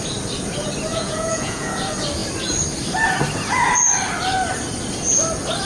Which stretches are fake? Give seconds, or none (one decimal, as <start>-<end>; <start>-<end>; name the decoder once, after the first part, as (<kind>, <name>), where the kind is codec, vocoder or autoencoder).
0.9-1.7 (vocoder, Vocos)